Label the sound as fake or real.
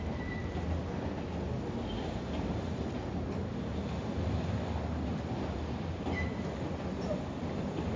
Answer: real